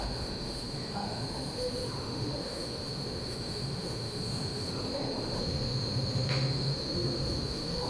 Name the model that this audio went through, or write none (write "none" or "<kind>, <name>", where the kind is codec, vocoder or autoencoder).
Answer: autoencoder, DAC-VAE